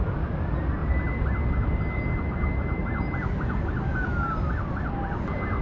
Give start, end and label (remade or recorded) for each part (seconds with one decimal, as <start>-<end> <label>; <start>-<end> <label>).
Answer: 0.0-5.6 recorded

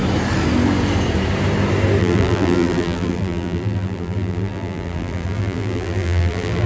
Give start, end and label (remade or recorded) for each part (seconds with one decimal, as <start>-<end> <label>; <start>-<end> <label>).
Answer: 0.0-2.0 recorded; 2.0-6.7 remade

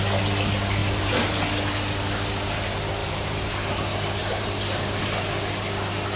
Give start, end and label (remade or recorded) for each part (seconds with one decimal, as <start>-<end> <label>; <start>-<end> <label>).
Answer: 0.0-0.8 recorded; 0.8-1.4 remade; 1.4-3.0 recorded; 3.0-3.5 remade; 3.5-4.2 recorded; 4.2-5.0 remade; 5.0-6.2 recorded

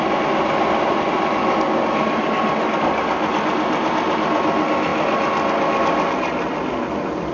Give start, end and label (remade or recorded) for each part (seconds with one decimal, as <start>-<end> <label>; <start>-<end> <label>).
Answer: 0.0-7.3 recorded

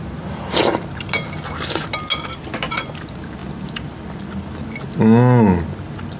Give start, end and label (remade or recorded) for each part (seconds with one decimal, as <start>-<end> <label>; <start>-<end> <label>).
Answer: 0.0-6.2 recorded

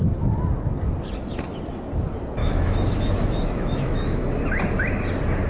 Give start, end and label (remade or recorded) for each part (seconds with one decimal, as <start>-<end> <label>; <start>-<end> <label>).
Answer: 0.0-2.4 recorded; 2.4-4.4 remade; 4.4-5.5 recorded

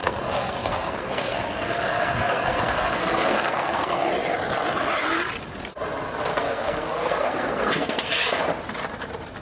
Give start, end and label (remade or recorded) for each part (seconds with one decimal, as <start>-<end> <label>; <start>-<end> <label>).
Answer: 0.0-4.1 remade; 4.1-6.3 recorded; 6.3-8.4 remade; 8.4-9.4 recorded

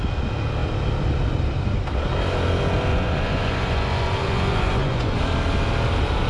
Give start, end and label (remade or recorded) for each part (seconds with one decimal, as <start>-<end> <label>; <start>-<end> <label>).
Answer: 0.0-2.9 recorded; 2.9-5.2 remade; 5.2-6.3 recorded